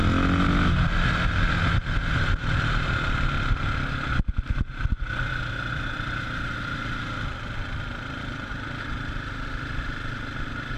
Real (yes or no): yes